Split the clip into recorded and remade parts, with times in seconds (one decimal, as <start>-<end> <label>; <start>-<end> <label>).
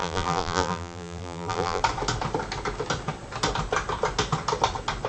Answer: 0.0-1.8 remade; 1.8-5.1 recorded